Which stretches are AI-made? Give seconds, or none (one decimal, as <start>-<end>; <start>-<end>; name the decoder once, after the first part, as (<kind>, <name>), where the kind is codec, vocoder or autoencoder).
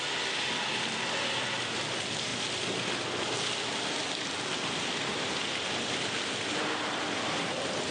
none